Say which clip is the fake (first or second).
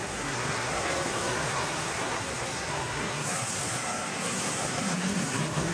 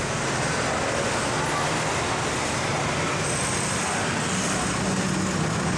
first